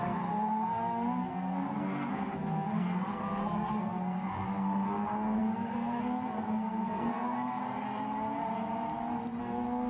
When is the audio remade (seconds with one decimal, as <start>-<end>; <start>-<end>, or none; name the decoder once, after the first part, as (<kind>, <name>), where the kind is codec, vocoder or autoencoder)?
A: 0.0-7.6 (codec, SNAC); 9.4-9.9